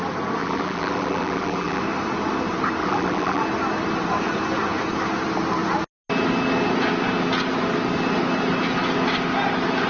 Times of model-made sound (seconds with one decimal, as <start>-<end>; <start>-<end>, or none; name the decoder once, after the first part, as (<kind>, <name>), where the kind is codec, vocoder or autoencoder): 0.4-1.8 (vocoder, BigVGAN v2); 2.8-3.4